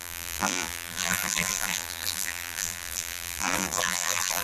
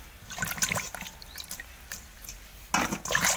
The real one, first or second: second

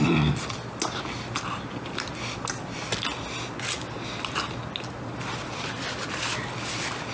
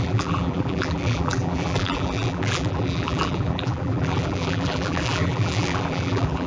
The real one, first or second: first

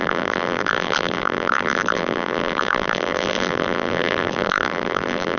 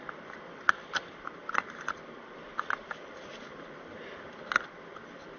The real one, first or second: second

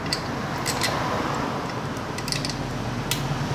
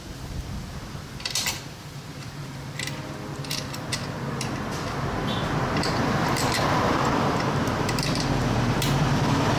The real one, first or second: first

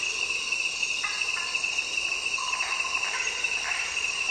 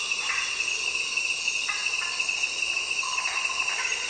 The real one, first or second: second